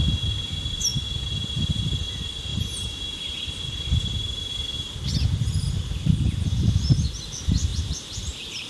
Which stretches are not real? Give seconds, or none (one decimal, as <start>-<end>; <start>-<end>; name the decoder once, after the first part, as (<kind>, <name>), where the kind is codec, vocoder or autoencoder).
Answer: 2.5-3.4 (vocoder, BigVGAN v2); 7.7-8.7